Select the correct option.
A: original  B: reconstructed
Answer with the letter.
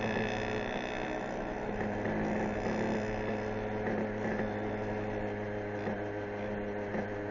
A